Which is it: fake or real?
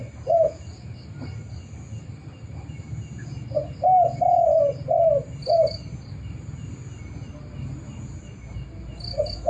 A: real